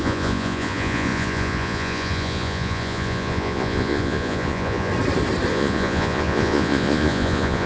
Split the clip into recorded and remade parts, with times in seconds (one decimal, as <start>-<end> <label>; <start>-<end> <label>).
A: 0.0-4.9 remade; 4.9-5.5 recorded; 5.5-7.7 remade